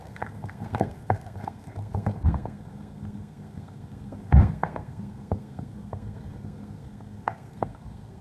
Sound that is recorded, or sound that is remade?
remade